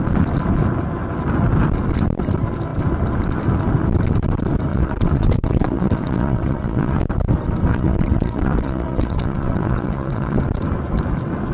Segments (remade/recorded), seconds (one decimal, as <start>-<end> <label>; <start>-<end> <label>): 0.0-4.7 recorded; 4.7-7.0 remade; 7.0-7.7 recorded; 7.7-10.4 remade; 10.4-11.5 recorded